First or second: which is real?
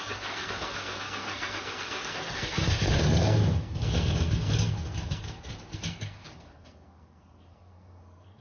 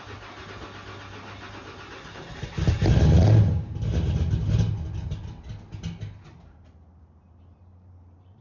second